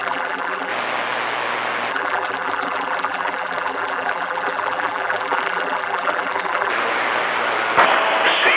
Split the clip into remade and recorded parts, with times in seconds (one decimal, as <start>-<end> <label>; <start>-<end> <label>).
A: 0.0-0.7 remade; 0.7-1.9 recorded; 1.9-6.7 remade; 6.7-8.6 recorded